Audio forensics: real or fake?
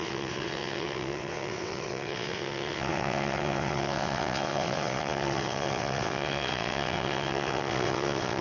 fake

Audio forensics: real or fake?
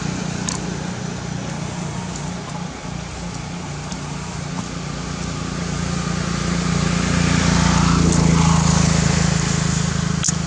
real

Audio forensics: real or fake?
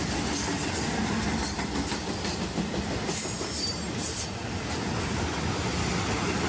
real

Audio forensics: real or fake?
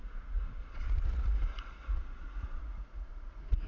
fake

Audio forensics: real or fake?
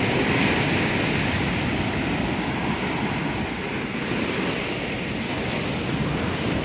real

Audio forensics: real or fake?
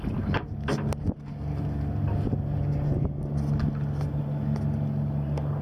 real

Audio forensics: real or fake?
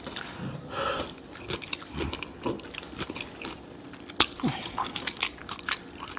real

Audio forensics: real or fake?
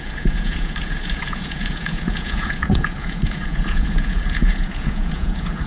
fake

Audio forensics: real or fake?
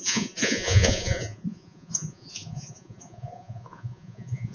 fake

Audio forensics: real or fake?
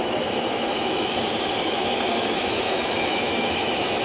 fake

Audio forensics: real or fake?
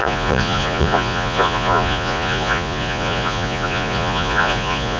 fake